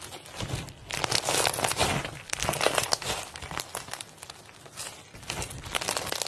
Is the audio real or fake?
real